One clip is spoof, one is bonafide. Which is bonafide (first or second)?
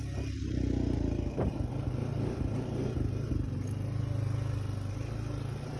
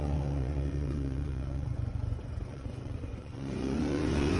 first